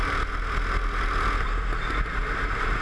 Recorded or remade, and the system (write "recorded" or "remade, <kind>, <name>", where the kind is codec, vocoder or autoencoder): recorded